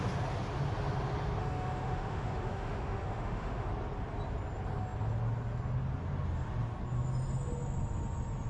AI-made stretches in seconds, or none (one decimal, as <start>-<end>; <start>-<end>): 1.4-3.7